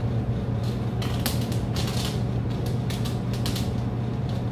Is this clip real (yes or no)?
yes